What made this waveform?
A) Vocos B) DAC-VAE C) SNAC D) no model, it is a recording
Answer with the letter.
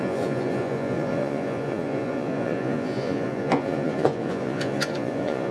A